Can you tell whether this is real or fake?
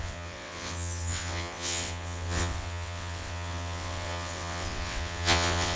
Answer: fake